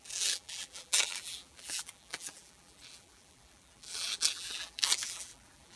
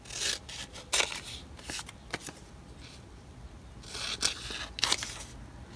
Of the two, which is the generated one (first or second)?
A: first